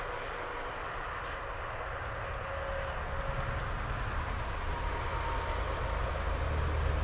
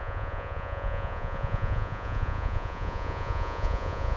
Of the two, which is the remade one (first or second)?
second